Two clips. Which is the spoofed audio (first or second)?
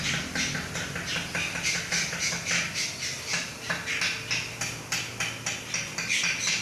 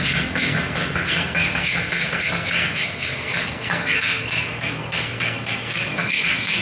second